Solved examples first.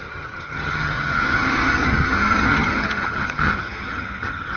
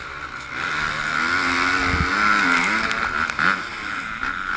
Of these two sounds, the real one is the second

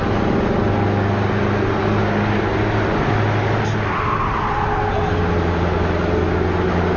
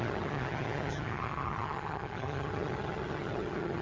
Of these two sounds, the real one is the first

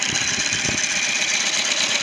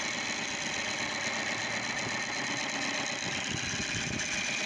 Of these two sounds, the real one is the second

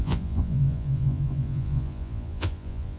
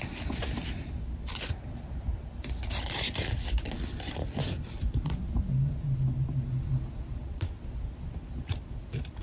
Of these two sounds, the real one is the second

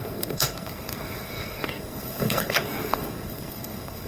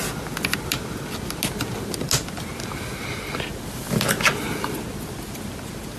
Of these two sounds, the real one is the second